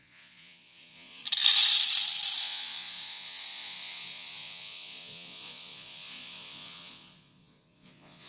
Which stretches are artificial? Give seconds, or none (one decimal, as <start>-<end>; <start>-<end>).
0.0-1.2; 2.4-8.3